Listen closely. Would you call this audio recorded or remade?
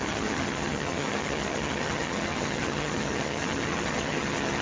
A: remade